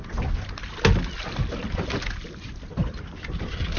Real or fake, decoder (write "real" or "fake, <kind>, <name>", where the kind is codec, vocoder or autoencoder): real